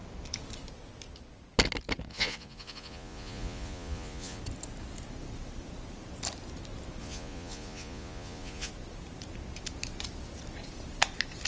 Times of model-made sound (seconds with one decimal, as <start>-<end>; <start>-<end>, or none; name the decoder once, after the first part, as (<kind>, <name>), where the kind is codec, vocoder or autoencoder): 2.1-4.4 (vocoder, Vocos); 7.0-8.7

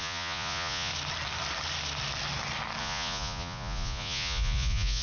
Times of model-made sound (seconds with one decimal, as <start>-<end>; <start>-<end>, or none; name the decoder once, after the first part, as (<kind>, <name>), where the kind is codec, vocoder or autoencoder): 0.0-0.9 (vocoder, Vocos); 2.8-5.0

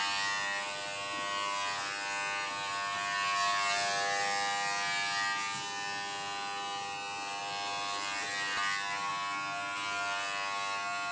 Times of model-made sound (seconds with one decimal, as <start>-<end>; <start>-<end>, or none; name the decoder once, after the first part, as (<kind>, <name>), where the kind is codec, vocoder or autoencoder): none

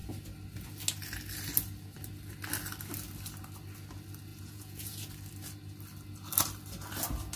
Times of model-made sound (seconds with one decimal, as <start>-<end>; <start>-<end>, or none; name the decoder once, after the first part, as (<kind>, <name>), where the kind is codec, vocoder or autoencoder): 4.3-5.1 (vocoder, Vocos)

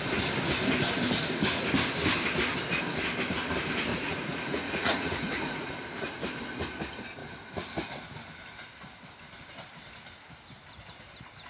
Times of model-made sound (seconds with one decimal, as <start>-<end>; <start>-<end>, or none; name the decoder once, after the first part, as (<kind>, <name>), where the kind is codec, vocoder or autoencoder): 3.9-5.7 (vocoder, Vocos)

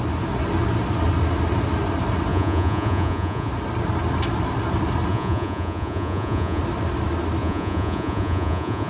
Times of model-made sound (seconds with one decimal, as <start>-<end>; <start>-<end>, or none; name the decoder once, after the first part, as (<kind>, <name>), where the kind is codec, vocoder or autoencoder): 2.3-3.5 (vocoder, Vocos); 5.1-6.6; 7.4-8.9

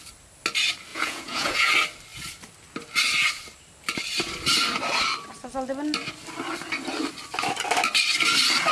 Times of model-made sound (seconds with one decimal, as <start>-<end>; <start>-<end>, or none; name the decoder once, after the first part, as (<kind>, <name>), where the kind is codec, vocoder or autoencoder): 0.9-1.7 (vocoder, Vocos)